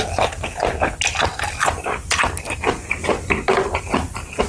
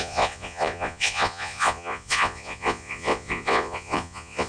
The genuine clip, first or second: first